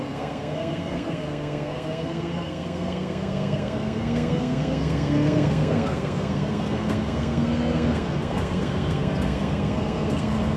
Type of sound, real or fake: fake